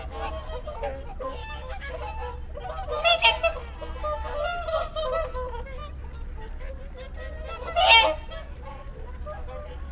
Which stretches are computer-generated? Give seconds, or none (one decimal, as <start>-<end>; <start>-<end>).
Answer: 1.4-1.9